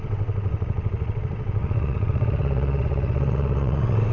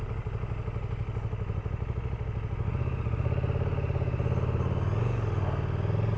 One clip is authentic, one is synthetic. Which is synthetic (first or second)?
first